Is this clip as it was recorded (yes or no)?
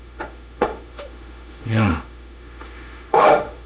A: no